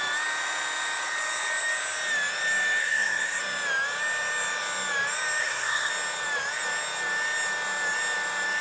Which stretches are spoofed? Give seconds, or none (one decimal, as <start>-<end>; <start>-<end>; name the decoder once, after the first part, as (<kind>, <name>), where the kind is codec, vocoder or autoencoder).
2.8-3.4 (codec, SNAC); 5.4-5.9